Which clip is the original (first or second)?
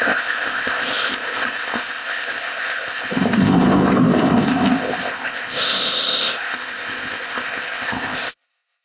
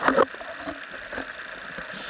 second